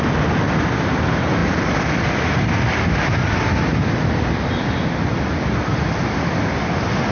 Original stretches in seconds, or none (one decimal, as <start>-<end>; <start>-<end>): 0.0-7.1